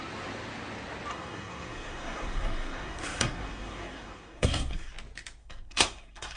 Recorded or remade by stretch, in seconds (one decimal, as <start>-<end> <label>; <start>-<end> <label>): 0.0-1.1 recorded; 1.1-4.9 remade; 4.9-5.4 recorded; 5.4-6.4 remade